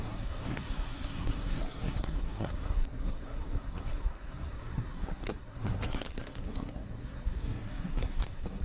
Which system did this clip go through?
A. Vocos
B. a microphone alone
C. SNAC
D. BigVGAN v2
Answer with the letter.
C